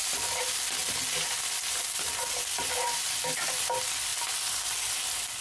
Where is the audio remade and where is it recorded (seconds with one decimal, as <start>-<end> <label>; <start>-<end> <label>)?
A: 0.0-0.8 remade; 0.8-2.4 recorded; 2.4-5.4 remade

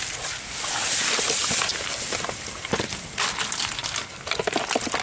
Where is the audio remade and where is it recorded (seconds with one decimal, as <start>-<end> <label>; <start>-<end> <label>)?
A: 0.0-5.0 recorded